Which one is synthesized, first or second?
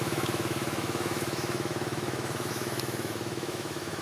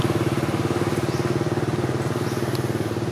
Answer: first